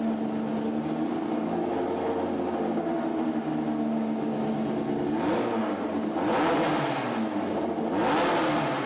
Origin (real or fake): real